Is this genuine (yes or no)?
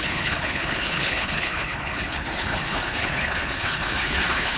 no